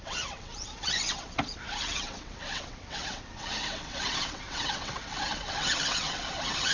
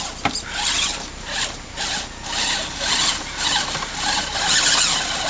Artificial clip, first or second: first